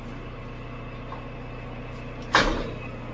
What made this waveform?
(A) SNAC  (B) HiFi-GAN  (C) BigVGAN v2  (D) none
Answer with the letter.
D